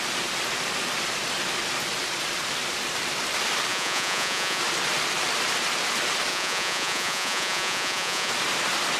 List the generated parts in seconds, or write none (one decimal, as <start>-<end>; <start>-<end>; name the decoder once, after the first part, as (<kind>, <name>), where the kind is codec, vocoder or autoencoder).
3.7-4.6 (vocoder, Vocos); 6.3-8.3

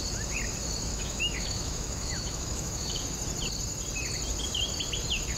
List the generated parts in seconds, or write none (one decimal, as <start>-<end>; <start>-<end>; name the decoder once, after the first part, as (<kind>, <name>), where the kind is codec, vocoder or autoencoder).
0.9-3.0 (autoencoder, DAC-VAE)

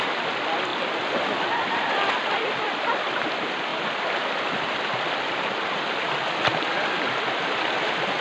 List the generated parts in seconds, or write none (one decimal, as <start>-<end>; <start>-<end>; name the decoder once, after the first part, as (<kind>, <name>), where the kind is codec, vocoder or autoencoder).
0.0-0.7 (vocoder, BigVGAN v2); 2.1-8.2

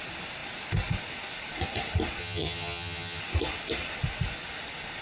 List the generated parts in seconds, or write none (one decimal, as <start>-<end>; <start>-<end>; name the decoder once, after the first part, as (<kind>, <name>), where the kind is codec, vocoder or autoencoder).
2.2-3.2 (vocoder, HiFi-GAN)

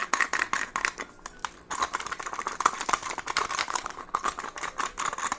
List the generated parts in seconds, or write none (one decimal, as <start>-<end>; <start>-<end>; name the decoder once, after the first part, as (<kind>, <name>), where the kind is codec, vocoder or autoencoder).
3.6-4.4 (codec, HILCodec)

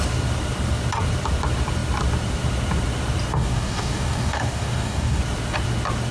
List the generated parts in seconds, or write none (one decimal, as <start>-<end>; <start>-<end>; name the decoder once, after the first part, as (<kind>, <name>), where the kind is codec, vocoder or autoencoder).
3.3-5.2 (codec, DAC)